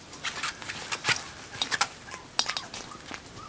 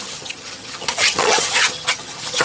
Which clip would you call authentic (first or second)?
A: first